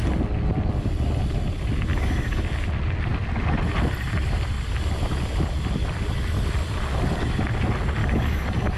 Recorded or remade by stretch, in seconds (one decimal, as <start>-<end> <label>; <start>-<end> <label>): 0.0-1.9 recorded; 1.9-2.4 remade; 2.4-8.0 recorded; 8.0-8.8 remade